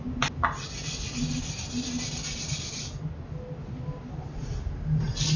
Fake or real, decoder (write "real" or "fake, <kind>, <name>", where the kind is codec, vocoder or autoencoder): real